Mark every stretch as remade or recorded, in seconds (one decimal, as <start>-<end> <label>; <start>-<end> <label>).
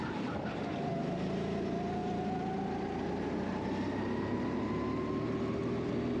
0.0-6.2 recorded